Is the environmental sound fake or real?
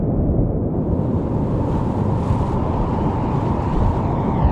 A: real